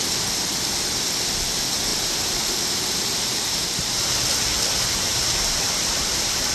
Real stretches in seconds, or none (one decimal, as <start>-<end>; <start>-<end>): 0.0-1.9; 4.1-5.1